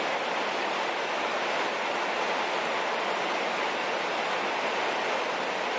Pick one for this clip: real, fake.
real